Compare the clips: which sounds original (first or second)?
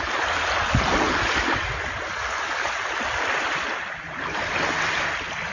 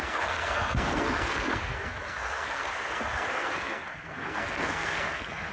first